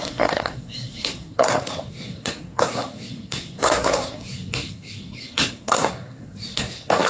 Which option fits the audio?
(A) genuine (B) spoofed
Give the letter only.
B